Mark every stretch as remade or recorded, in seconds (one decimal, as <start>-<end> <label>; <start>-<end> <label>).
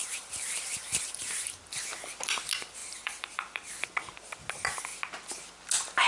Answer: 0.0-1.6 remade; 1.6-2.8 recorded; 2.8-3.7 remade; 3.7-6.1 recorded